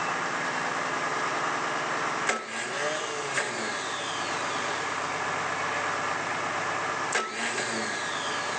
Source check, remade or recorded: recorded